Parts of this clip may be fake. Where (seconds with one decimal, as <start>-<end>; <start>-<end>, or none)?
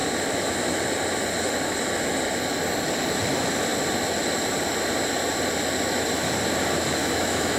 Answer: 7.0-7.6